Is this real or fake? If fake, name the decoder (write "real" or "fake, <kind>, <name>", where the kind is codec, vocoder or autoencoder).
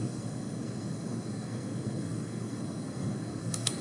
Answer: fake, codec, SNAC